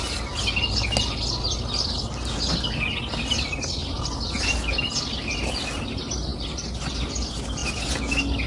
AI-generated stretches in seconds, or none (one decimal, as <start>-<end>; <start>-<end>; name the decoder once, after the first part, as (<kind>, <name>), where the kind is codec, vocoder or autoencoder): none